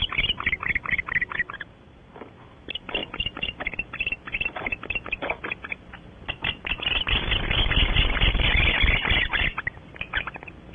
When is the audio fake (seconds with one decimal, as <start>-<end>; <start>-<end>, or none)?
none